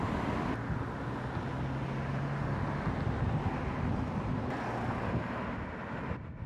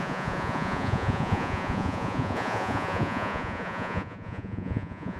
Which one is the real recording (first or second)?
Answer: first